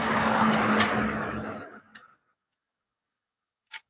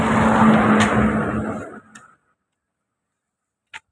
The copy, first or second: first